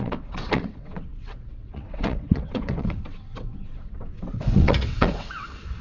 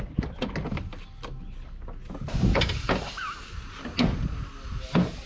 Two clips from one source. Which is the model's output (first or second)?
first